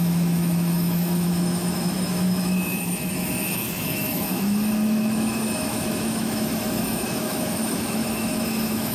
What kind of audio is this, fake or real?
fake